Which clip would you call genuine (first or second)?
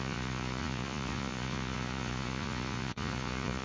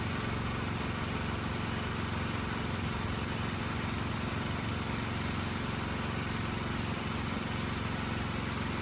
second